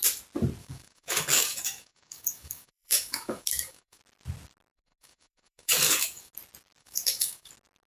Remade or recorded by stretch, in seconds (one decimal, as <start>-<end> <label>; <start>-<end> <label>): 0.0-0.6 recorded; 0.6-4.0 remade; 4.0-4.7 recorded; 4.7-6.3 remade; 6.3-6.8 recorded; 6.8-7.5 remade; 7.5-7.9 recorded